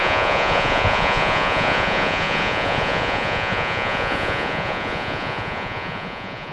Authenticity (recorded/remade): remade